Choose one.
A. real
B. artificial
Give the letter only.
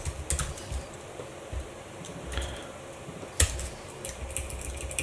A